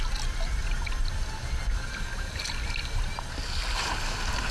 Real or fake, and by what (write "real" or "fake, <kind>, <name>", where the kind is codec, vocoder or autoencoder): real